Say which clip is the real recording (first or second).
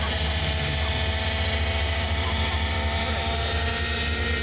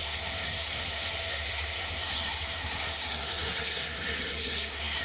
first